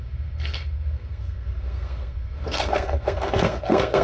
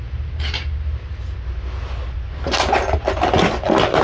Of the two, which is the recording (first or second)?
second